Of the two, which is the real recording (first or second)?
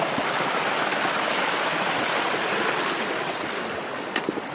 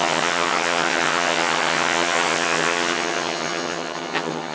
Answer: first